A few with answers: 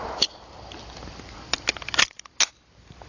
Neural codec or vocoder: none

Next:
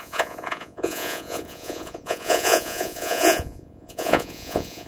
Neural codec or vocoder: vocoder, Vocos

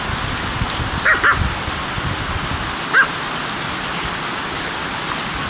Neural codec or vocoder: none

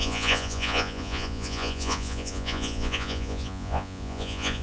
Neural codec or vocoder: vocoder, Vocos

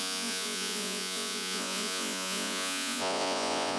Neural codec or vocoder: vocoder, Vocos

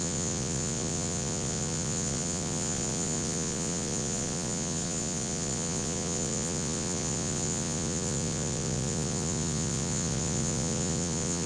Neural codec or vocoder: vocoder, Vocos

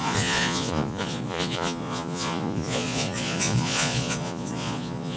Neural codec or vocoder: vocoder, Vocos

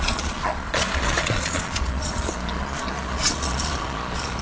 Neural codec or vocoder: vocoder, Vocos